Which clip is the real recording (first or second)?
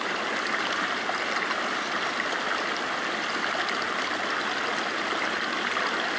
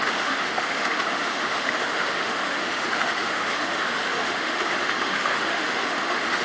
first